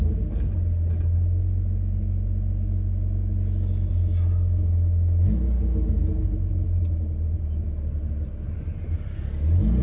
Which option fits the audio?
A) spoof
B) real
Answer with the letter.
B